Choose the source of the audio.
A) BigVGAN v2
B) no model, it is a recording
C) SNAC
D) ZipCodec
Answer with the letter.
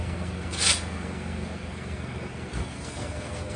C